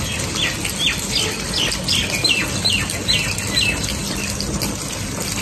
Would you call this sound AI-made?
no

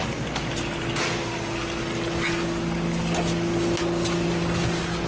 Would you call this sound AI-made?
no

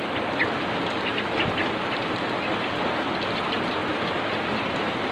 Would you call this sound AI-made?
yes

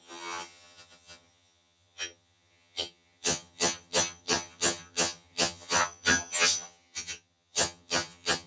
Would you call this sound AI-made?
yes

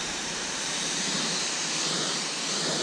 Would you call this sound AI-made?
yes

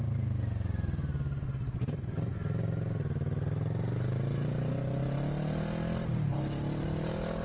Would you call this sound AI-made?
no